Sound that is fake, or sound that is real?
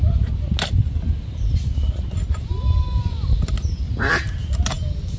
real